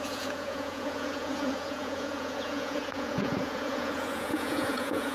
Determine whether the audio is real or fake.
fake